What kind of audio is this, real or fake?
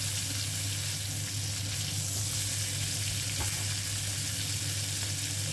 real